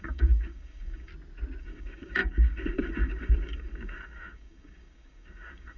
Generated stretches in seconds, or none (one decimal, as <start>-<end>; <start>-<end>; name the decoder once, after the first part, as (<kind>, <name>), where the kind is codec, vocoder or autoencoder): 0.0-1.1 (codec, DAC); 1.6-5.8